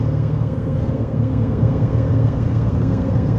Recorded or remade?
remade